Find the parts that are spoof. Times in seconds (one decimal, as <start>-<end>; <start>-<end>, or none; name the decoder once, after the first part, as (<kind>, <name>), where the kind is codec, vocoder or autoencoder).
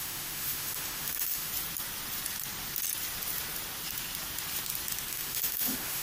0.0-1.5 (autoencoder, DAC-VAE); 5.1-6.0